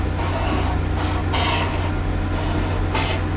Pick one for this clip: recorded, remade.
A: recorded